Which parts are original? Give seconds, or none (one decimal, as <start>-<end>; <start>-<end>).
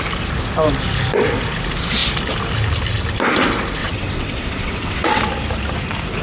0.0-3.8; 5.2-6.2